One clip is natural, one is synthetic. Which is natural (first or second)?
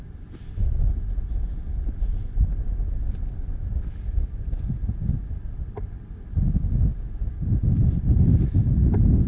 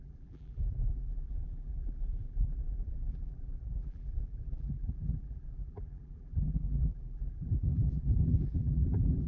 first